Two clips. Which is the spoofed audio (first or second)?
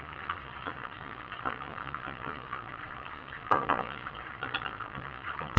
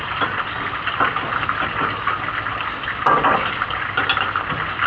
first